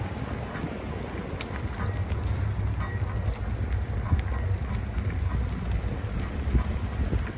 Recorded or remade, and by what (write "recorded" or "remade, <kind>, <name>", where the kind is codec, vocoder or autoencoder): recorded